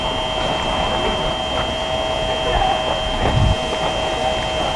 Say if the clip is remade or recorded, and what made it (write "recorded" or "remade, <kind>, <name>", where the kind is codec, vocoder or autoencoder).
recorded